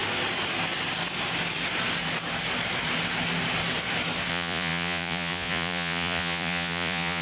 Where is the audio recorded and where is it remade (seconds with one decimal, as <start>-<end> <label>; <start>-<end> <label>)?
0.0-4.3 recorded; 4.3-7.2 remade